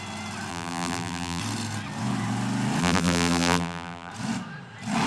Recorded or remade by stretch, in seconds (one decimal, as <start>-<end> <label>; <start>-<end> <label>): 0.0-0.5 recorded; 0.5-1.4 remade; 1.4-2.8 recorded; 2.8-4.1 remade; 4.1-5.1 recorded